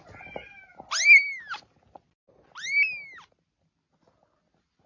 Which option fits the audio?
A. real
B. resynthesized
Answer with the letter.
A